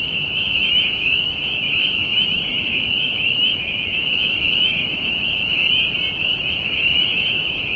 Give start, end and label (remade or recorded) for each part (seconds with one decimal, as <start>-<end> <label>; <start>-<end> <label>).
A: 0.0-5.6 remade; 5.6-6.2 recorded; 6.2-7.8 remade